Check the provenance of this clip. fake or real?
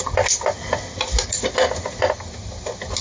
real